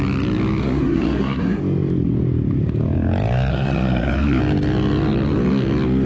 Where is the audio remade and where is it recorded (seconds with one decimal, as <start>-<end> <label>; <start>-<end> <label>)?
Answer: 0.0-0.6 recorded; 0.6-1.6 remade; 1.6-3.5 recorded; 3.5-4.4 remade; 4.4-6.1 recorded